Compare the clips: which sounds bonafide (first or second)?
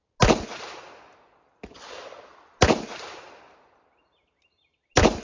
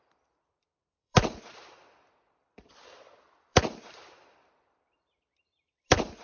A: first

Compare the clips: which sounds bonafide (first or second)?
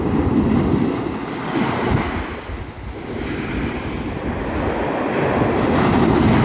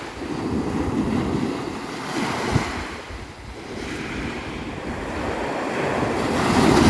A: first